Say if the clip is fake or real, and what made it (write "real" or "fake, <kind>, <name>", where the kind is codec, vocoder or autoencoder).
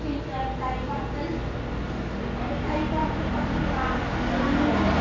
real